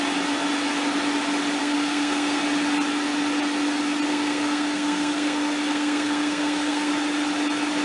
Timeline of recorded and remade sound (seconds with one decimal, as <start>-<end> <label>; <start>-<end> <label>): 0.0-1.6 recorded; 1.6-2.4 remade; 2.4-4.1 recorded; 4.1-6.9 remade; 6.9-7.8 recorded